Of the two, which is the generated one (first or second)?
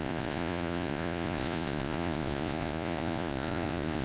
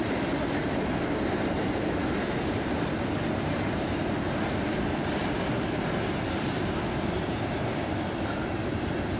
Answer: first